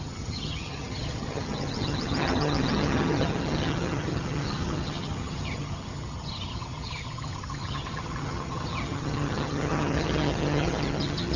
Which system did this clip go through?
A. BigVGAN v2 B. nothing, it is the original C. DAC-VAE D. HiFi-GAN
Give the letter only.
D